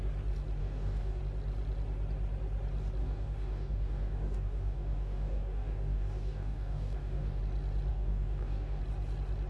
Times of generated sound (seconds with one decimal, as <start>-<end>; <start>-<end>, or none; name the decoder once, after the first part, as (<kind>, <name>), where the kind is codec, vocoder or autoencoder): 0.6-1.2 (codec, DAC); 3.0-7.4; 7.9-8.8